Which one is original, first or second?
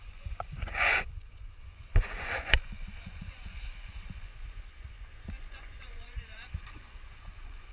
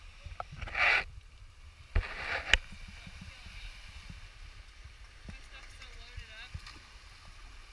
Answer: second